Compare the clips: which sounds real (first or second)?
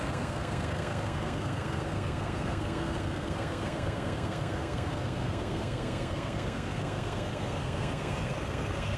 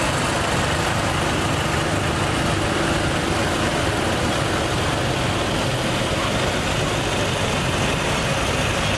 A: second